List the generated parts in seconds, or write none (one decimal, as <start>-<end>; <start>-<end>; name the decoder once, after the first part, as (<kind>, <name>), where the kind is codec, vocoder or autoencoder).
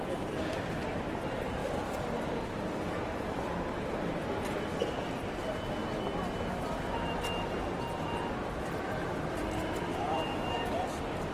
0.0-5.8 (vocoder, BigVGAN v2); 8.4-11.3